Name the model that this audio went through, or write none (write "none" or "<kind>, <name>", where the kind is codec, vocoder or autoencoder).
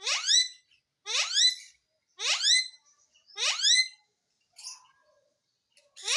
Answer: vocoder, BigVGAN v2